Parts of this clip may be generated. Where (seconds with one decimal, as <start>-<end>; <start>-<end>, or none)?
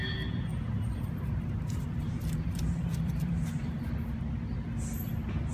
0.5-3.8